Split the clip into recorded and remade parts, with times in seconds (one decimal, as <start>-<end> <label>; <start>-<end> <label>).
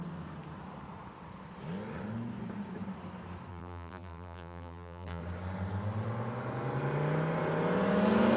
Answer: 0.0-3.5 recorded; 3.5-5.2 remade; 5.2-8.4 recorded